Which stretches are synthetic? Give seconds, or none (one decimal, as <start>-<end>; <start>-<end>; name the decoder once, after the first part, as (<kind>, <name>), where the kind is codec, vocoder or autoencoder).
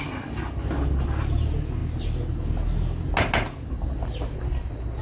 none